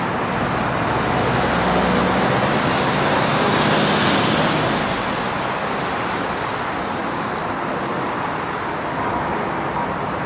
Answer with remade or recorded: recorded